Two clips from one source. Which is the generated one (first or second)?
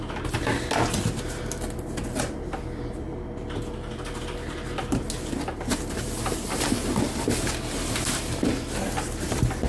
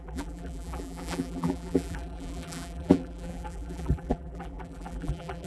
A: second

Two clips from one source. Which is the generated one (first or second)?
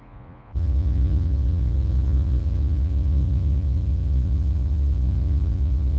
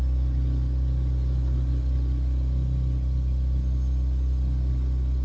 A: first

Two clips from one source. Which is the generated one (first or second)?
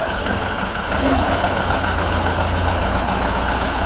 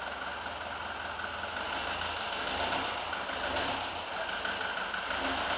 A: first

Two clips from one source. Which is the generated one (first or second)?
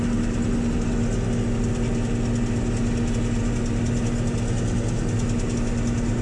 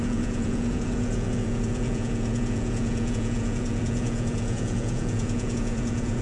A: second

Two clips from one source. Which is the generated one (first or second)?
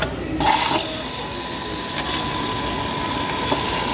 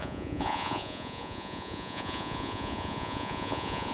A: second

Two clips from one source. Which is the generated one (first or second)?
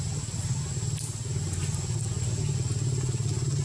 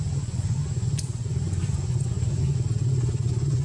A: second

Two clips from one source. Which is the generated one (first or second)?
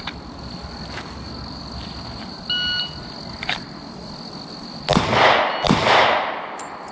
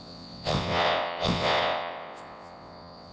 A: second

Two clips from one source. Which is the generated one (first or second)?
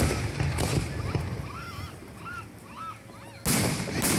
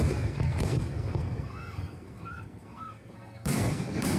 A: second